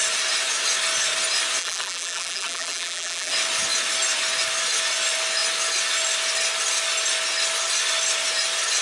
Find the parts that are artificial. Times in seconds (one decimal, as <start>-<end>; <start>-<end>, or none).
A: 1.6-3.3